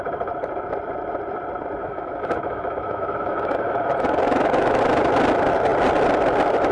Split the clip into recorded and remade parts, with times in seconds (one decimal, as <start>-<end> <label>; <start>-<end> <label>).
0.0-1.8 recorded; 1.8-4.8 remade; 4.8-6.7 recorded